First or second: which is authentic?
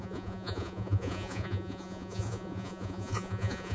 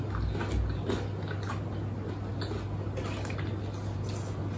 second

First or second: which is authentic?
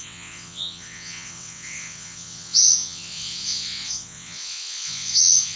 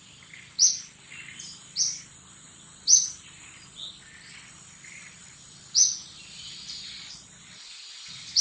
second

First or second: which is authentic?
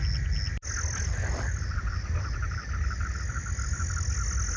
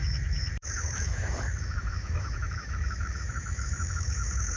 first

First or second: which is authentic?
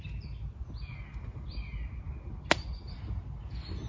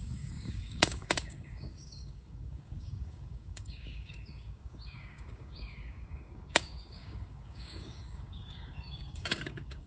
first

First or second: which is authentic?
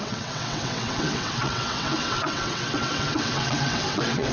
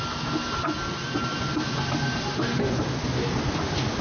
second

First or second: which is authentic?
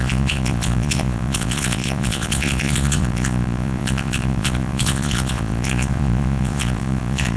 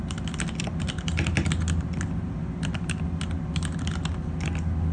second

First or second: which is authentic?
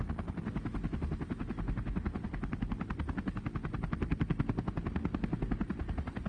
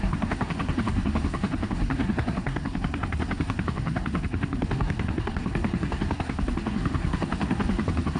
first